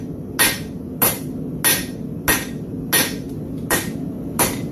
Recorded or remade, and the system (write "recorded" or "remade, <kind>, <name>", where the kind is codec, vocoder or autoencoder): recorded